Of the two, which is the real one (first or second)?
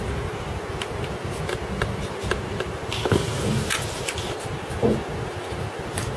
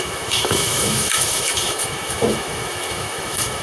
first